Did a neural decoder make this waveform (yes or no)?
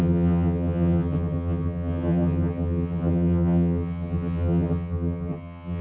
yes